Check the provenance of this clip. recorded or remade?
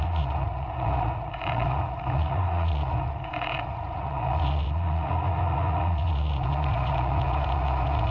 remade